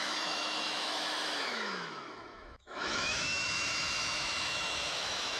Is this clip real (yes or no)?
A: no